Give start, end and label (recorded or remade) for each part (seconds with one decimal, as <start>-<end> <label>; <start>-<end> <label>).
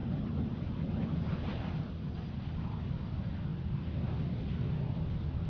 0.0-5.5 recorded